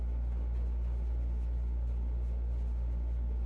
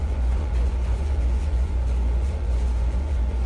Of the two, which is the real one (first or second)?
first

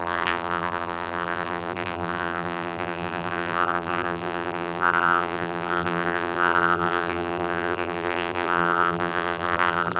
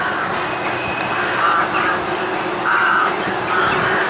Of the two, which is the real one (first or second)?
second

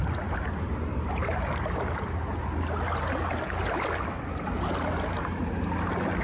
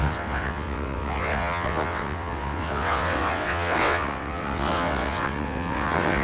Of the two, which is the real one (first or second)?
first